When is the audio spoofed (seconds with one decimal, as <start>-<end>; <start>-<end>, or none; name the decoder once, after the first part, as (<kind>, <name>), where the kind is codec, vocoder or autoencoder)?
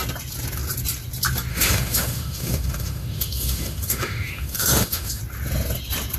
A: 1.5-5.2 (autoencoder, DAC-VAE)